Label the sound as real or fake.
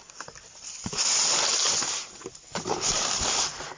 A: real